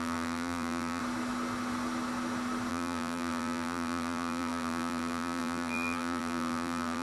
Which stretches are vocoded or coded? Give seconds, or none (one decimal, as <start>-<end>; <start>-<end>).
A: 0.0-1.0; 2.7-7.0